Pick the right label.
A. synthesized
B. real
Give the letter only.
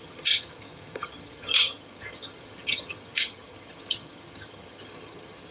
A